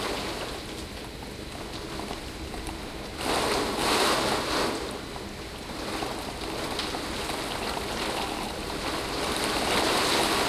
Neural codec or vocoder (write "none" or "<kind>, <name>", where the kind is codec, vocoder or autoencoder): none